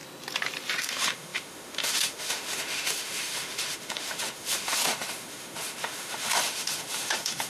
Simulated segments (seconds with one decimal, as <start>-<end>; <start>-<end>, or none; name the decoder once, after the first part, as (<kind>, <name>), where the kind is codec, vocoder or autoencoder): 0.8-7.5 (autoencoder, DAC-VAE)